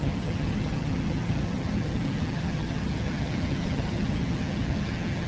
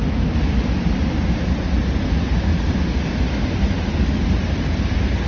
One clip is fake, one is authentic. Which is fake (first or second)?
first